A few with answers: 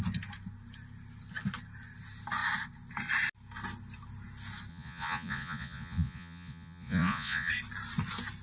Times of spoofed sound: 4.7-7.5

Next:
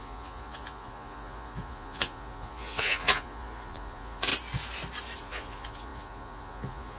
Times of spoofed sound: 0.0-4.3; 5.2-7.0

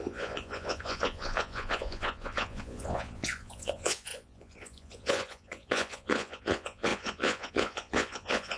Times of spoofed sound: 0.0-8.6

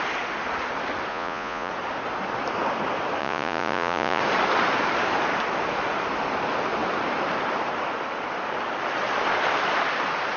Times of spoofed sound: 1.1-1.7; 3.2-4.2

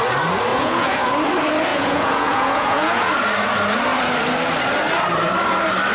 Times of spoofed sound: 0.5-1.1; 1.7-3.1

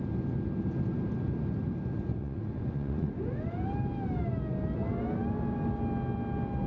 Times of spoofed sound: 2.2-3.1

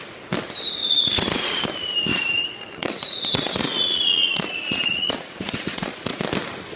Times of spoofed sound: 0.8-1.6; 2.7-6.2